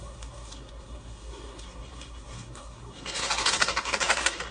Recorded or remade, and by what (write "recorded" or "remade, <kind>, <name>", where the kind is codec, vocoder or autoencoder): remade, codec, SNAC